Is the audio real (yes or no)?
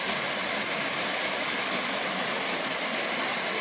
no